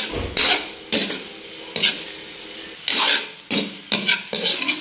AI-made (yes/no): no